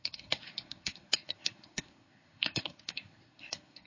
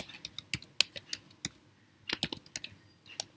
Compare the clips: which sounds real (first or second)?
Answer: second